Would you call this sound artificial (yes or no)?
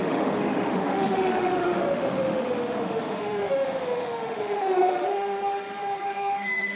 yes